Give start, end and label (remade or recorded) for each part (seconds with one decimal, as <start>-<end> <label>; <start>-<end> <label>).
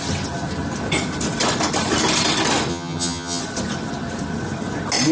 0.0-2.7 recorded; 2.7-3.4 remade; 3.4-5.1 recorded